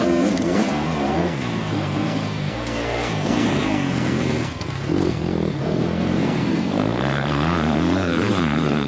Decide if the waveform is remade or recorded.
remade